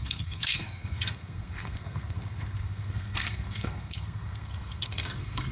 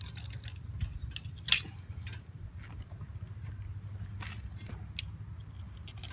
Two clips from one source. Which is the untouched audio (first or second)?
second